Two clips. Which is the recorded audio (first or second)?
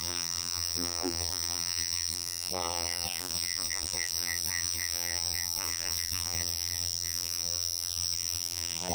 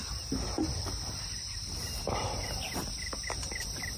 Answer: second